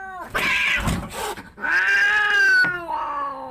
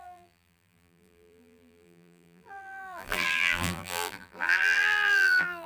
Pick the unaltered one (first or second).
first